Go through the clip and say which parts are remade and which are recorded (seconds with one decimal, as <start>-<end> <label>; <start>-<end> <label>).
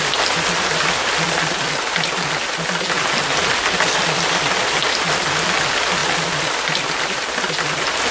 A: 0.0-8.1 recorded